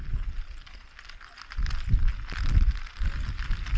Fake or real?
real